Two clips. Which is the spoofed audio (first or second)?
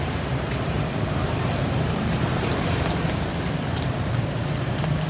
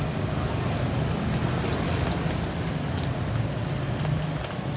first